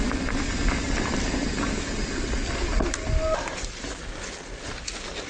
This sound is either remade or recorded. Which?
recorded